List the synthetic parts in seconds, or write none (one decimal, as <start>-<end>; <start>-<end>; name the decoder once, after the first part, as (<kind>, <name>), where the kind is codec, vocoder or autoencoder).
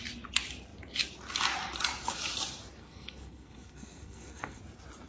2.8-4.6 (codec, SNAC)